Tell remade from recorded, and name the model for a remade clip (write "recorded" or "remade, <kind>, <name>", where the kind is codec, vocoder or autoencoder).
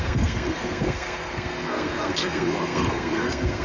remade, codec, SNAC